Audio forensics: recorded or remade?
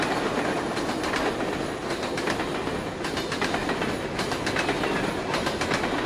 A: recorded